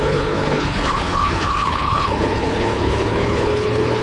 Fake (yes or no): yes